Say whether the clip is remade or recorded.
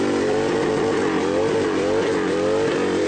remade